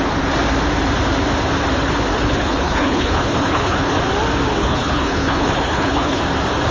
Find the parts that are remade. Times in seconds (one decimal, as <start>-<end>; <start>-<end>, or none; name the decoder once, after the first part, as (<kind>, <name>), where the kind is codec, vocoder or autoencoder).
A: 2.1-4.0 (codec, HILCodec); 4.6-6.2